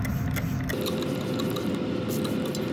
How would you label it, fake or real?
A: real